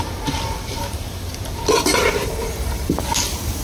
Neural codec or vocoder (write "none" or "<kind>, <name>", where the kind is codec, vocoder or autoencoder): vocoder, BigVGAN v2